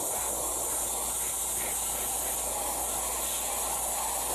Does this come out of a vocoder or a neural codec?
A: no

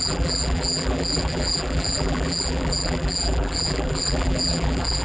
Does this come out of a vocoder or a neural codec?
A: yes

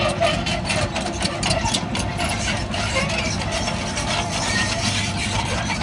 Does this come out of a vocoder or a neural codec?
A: yes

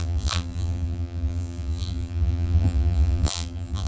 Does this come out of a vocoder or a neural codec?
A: yes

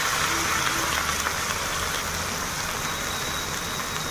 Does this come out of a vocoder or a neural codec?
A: no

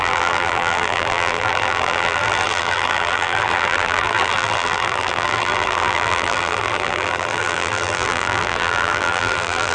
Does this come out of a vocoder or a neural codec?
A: yes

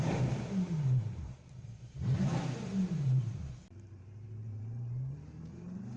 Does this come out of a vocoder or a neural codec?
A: yes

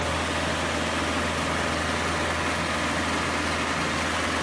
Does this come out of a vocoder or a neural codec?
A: no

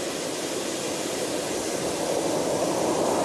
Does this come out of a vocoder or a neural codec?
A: no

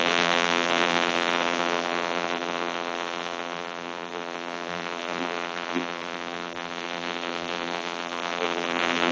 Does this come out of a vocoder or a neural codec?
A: yes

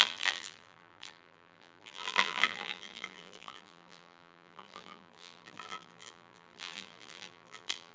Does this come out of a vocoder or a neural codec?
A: yes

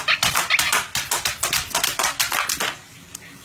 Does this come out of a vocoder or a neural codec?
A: no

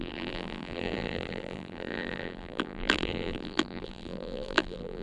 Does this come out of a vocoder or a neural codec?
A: yes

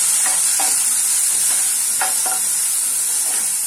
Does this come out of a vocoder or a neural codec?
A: yes